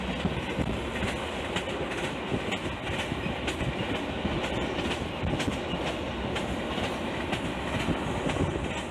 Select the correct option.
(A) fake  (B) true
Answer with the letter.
B